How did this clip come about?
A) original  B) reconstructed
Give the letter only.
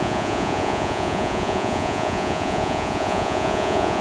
B